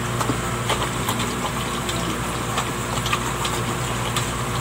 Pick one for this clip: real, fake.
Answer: real